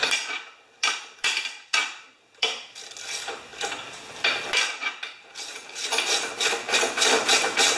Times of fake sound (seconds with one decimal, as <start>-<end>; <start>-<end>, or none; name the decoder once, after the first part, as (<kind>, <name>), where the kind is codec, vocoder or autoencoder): 0.0-7.8 (vocoder, BigVGAN v2)